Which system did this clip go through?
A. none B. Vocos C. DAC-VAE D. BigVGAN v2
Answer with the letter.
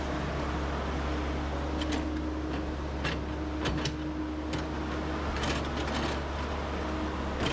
A